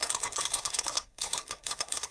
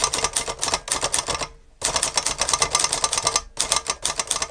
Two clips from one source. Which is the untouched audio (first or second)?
second